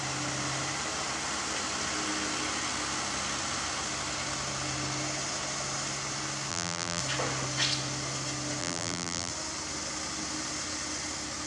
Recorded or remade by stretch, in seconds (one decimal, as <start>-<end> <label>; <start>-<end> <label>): 0.0-6.5 recorded; 6.5-7.0 remade; 7.0-8.6 recorded; 8.6-9.3 remade; 9.3-11.5 recorded